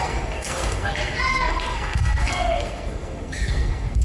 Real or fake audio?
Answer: fake